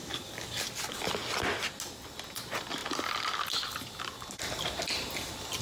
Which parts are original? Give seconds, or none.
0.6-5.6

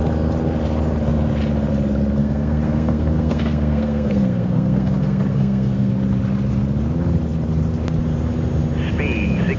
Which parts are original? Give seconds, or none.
0.0-2.2; 5.9-9.6

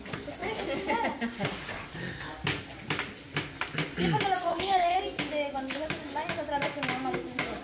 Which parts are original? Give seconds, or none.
0.0-4.5; 5.0-7.6

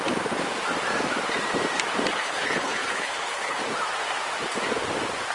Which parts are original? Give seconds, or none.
0.0-2.1; 3.6-5.3

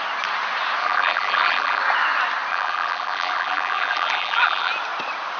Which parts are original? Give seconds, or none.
0.0-0.8; 1.8-2.5; 4.7-5.4

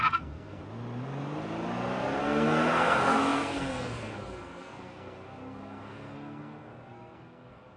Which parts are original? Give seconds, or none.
0.6-2.2